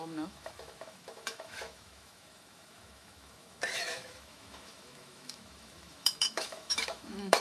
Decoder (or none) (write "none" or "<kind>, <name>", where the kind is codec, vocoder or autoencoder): autoencoder, DAC-VAE